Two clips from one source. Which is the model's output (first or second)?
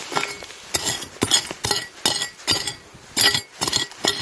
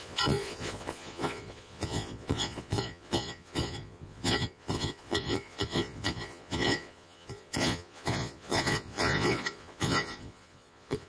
second